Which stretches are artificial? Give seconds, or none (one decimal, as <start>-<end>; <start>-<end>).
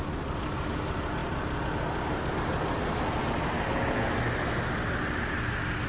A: none